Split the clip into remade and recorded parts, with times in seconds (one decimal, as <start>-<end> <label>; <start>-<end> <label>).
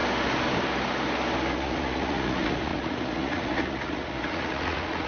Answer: 0.0-1.5 recorded; 1.5-5.1 remade